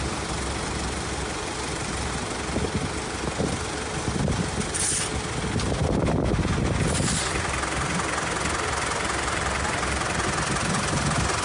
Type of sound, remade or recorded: recorded